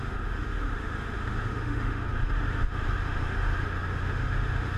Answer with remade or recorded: remade